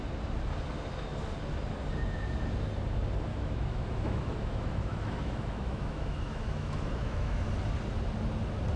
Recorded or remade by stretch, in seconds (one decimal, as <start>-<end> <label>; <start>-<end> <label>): 0.0-3.3 recorded; 3.3-7.5 remade; 7.5-8.8 recorded